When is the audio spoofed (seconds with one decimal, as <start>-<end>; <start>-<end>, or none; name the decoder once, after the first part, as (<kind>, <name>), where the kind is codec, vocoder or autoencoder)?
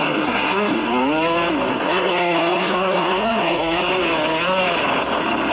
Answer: 0.0-0.9 (codec, SNAC); 1.7-3.9